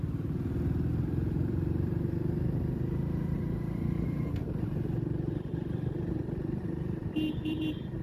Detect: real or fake fake